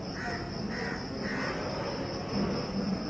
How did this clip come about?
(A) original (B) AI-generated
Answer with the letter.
A